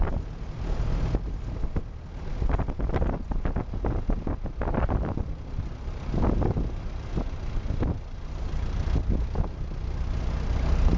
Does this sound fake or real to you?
real